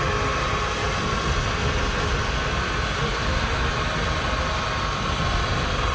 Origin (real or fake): real